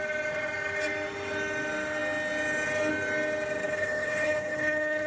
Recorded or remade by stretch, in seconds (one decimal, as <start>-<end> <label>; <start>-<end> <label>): 0.0-3.6 recorded; 3.6-5.1 remade